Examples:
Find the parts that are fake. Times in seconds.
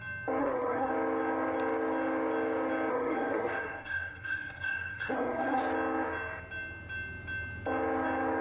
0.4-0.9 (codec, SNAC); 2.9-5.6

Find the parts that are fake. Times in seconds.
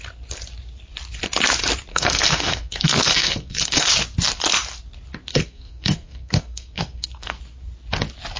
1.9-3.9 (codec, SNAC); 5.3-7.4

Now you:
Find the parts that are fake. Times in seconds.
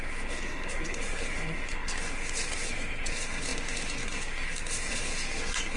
0.0-5.8 (codec, SNAC)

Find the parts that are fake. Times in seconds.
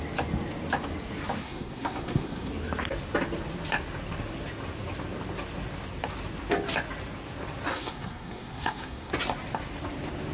1.4-2.5 (codec, SNAC); 7.7-9.1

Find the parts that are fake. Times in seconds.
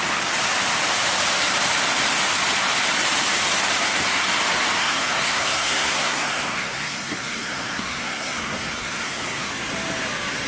4.8-9.5 (codec, SNAC)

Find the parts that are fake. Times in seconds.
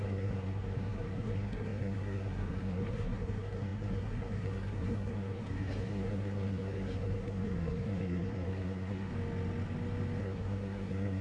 0.0-9.1 (codec, SNAC); 10.2-11.2